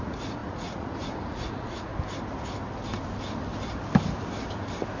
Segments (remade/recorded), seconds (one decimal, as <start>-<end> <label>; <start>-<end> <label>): 0.0-1.9 remade; 1.9-5.0 recorded